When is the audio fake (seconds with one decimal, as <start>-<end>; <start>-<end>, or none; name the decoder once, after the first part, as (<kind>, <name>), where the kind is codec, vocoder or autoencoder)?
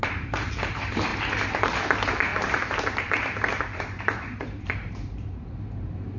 0.0-1.1 (vocoder, BigVGAN v2); 1.8-6.2